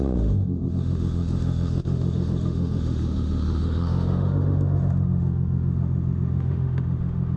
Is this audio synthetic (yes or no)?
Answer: yes